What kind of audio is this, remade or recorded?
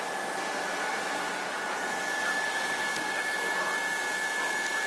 recorded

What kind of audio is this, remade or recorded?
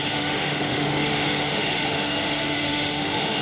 remade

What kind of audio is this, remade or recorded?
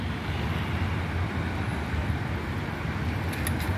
recorded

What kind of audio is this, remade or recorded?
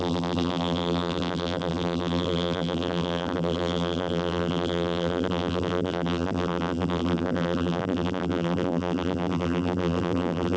remade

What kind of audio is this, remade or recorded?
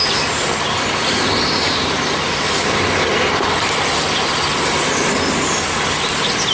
recorded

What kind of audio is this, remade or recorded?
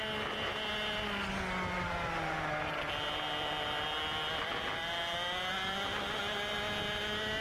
recorded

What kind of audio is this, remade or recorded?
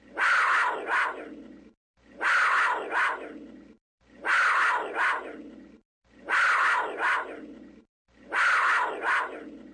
remade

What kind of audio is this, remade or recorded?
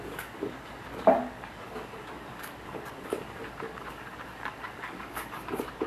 remade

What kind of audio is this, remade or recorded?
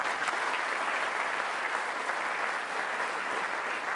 recorded